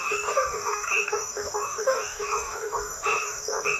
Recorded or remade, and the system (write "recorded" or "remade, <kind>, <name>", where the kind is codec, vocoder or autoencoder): remade, codec, DAC